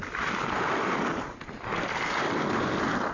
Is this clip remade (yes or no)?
no